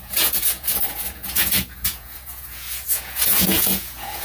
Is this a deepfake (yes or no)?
yes